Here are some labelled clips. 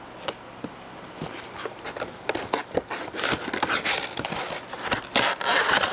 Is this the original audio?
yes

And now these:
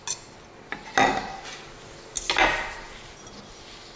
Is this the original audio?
yes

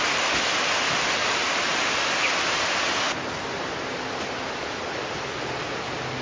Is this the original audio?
yes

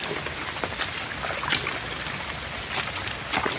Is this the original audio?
yes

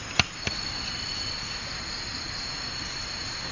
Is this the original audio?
yes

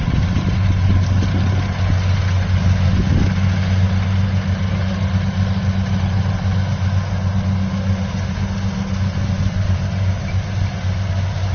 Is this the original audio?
yes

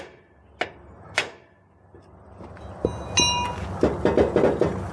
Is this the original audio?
yes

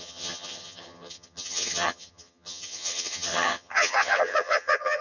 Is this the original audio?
no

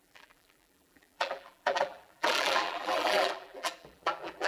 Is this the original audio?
no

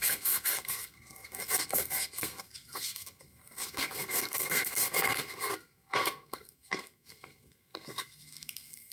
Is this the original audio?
no